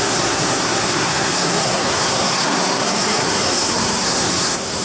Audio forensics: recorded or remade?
remade